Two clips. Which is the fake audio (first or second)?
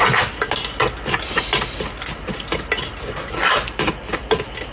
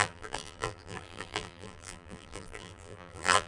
second